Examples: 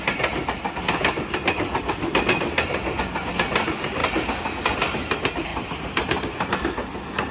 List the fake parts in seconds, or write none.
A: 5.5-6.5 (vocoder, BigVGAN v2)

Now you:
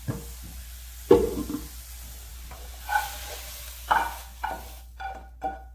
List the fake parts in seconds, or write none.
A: none